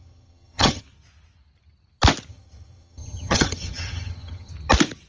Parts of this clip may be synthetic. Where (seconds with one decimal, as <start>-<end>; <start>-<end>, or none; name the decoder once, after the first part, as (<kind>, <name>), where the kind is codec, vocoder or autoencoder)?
0.0-0.8 (vocoder, HiFi-GAN); 2.3-4.5